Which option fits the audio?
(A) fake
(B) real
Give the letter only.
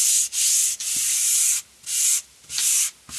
B